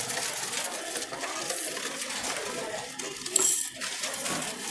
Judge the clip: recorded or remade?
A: recorded